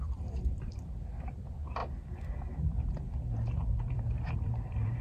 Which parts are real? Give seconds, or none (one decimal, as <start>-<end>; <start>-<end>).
1.8-3.9